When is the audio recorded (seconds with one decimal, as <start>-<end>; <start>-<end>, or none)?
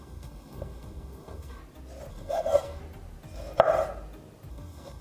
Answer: 1.6-2.1; 2.8-4.5